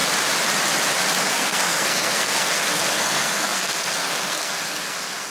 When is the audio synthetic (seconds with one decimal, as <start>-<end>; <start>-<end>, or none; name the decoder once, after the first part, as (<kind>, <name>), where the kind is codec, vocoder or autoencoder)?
1.2-5.3 (codec, SNAC)